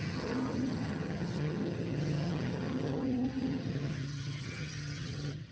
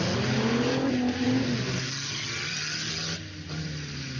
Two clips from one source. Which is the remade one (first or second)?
first